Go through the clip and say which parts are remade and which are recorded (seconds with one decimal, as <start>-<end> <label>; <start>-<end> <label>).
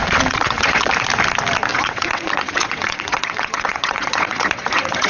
0.0-0.9 remade; 0.9-1.7 recorded; 1.7-5.1 remade